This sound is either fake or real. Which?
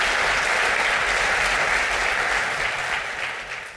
real